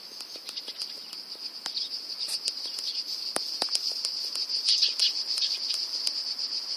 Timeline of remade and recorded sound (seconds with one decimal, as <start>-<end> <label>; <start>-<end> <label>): 0.0-2.9 recorded; 2.9-3.7 remade; 3.7-5.0 recorded; 5.0-6.1 remade; 6.1-6.8 recorded